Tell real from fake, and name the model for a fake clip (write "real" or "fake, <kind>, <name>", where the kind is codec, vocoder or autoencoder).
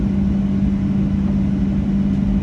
real